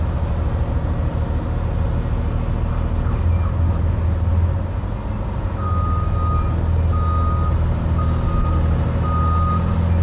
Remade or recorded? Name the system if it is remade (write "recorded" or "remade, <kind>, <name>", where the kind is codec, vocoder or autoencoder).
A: recorded